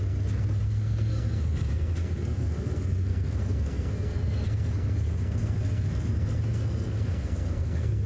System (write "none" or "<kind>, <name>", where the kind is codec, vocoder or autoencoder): codec, SNAC